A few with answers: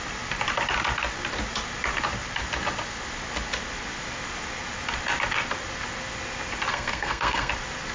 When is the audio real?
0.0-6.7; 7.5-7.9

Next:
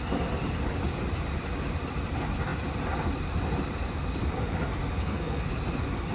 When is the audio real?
0.0-5.0; 5.5-6.1

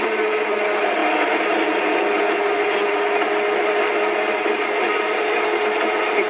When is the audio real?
0.0-6.3

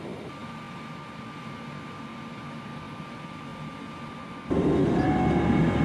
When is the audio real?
0.0-5.8

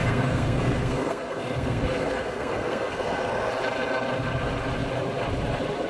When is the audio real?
3.5-5.9

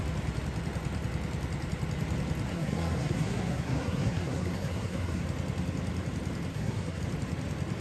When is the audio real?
0.0-2.5; 5.2-6.5; 7.0-7.8

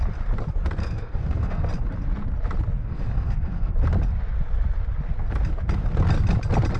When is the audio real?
0.0-0.8; 1.7-2.8; 3.7-6.8